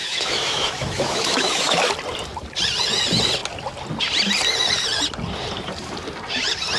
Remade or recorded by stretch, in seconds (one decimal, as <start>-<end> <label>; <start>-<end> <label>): 0.0-1.9 remade; 1.9-6.8 recorded